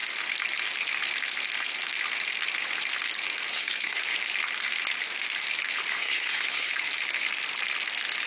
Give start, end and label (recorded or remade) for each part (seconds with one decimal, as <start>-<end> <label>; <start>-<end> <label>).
0.0-3.5 recorded; 3.5-4.0 remade; 4.0-5.9 recorded; 5.9-6.7 remade; 6.7-8.3 recorded